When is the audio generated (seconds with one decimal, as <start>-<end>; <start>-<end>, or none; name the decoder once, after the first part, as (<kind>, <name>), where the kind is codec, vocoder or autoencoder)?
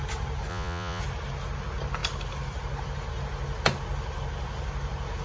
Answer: 0.5-1.0 (vocoder, Vocos)